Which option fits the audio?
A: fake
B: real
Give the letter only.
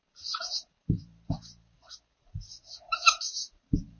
A